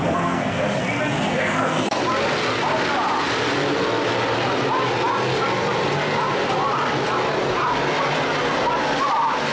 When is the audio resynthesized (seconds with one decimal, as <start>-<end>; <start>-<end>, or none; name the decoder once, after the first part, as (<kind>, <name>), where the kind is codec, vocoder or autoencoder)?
0.0-0.8 (codec, SNAC); 1.3-2.0

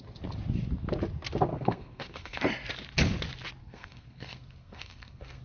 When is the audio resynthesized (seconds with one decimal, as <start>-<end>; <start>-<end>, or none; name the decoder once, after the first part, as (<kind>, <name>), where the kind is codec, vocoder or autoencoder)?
1.5-2.4 (codec, SNAC); 3.6-5.4